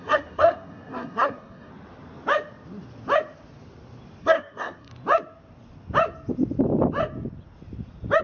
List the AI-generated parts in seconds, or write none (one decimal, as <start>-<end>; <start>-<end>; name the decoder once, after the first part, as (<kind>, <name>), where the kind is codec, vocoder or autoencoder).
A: 0.0-1.7 (codec, SNAC); 4.2-4.9